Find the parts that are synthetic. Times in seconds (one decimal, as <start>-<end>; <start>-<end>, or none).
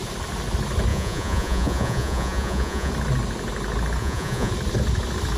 0.9-2.9; 4.0-4.5